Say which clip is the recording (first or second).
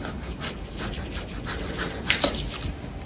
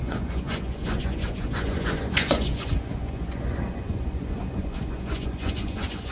first